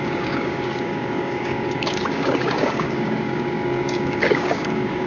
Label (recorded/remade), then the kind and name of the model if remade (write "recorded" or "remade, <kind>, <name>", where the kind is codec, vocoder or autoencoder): remade, codec, DAC